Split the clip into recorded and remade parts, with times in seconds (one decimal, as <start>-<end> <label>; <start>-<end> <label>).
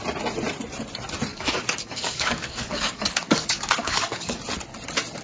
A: 0.0-1.3 recorded; 1.3-4.4 remade; 4.4-5.2 recorded